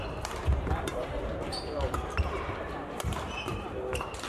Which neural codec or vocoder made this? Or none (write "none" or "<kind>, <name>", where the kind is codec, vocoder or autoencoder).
vocoder, BigVGAN v2